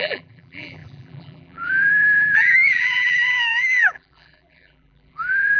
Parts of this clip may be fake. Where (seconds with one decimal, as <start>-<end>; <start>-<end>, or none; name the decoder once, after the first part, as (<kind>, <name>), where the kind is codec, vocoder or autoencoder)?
0.0-5.6 (vocoder, BigVGAN v2)